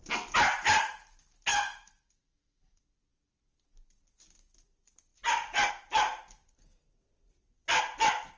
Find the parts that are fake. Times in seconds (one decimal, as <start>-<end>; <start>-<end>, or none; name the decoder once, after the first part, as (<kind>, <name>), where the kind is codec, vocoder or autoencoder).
1.5-2.8 (autoencoder, DAC-VAE)